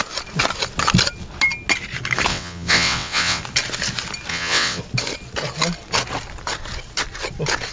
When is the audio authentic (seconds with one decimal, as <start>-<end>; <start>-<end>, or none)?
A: 0.0-2.3; 3.4-4.3; 4.8-7.7